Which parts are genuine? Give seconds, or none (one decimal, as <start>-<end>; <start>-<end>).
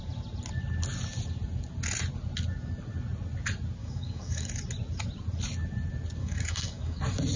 0.0-3.8; 4.5-6.2; 7.0-7.4